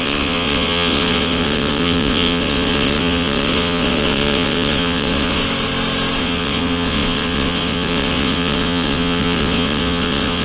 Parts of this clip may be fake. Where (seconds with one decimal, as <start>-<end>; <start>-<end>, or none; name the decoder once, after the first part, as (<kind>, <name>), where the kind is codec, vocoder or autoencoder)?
0.0-5.4 (vocoder, WaveNeXt); 6.2-10.4